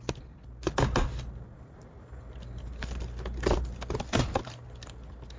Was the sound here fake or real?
real